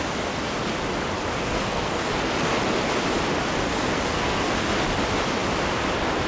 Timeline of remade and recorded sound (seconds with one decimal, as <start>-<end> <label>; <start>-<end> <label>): 0.0-1.5 recorded; 1.5-2.1 remade; 2.1-3.7 recorded; 3.7-4.5 remade; 4.5-6.3 recorded